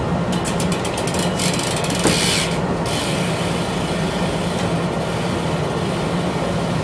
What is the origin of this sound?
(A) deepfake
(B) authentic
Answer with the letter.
B